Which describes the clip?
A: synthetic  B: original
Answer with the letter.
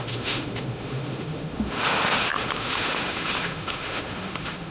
A